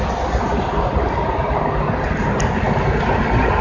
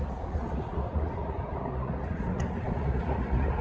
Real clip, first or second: first